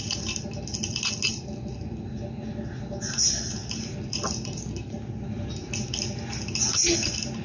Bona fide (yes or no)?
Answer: yes